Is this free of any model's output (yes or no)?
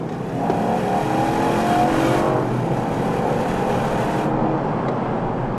yes